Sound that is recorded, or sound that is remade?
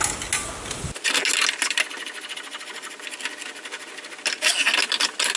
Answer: recorded